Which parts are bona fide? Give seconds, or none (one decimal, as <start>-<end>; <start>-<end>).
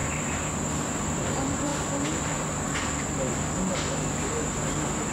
0.0-0.7